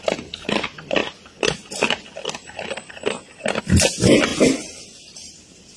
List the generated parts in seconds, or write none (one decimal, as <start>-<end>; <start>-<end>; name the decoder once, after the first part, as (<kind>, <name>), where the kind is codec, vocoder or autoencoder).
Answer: none